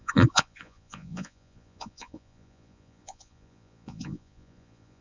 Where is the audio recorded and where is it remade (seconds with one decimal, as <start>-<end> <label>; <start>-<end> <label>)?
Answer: 0.0-5.0 remade